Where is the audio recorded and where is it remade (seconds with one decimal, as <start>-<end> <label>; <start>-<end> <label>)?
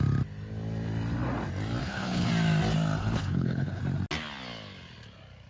0.0-1.8 recorded; 1.8-2.3 remade; 2.3-3.0 recorded; 3.0-3.8 remade; 3.8-5.5 recorded